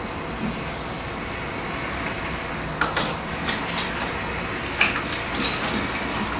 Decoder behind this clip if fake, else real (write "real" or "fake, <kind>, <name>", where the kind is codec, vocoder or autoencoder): real